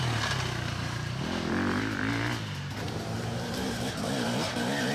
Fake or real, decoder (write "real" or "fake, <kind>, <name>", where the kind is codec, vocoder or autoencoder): real